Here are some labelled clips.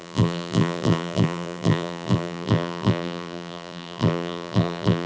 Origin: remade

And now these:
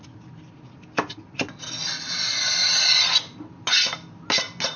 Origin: recorded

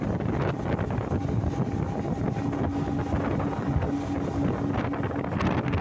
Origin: recorded